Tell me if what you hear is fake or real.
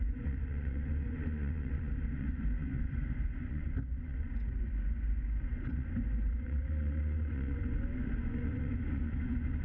fake